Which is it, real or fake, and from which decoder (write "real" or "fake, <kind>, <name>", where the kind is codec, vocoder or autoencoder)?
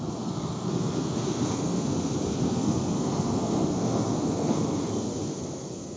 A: fake, codec, SNAC